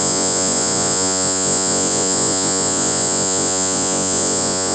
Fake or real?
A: fake